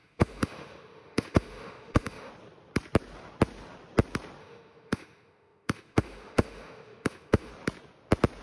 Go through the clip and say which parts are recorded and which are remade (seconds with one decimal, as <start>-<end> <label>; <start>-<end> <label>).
0.0-2.3 remade; 2.3-4.4 recorded; 4.4-7.5 remade; 7.5-8.4 recorded